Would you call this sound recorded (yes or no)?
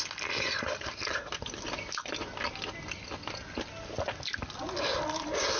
yes